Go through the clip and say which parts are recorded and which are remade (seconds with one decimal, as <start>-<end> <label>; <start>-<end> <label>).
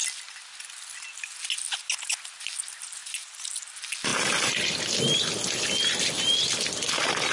0.0-3.0 recorded; 3.0-3.6 remade; 3.6-4.1 recorded; 4.1-4.7 remade; 4.7-7.3 recorded